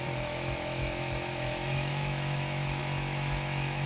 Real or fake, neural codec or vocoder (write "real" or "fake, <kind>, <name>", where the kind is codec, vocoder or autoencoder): fake, autoencoder, DAC-VAE